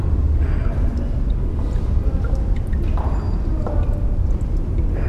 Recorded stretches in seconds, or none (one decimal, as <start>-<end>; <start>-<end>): 0.0-5.1